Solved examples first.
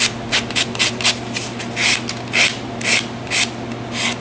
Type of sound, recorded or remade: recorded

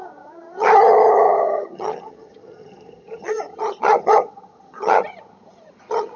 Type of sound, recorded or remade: remade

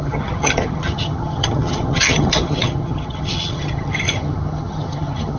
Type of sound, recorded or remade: remade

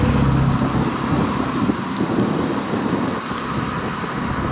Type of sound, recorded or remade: recorded